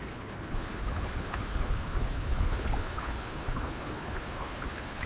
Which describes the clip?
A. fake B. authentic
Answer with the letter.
A